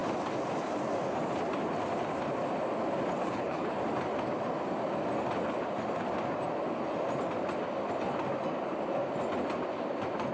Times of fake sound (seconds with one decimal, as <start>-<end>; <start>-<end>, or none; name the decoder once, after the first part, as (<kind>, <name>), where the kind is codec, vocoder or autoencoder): 3.2-3.8 (codec, HILCodec)